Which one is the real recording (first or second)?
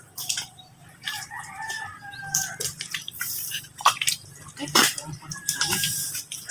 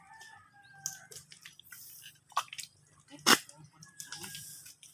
second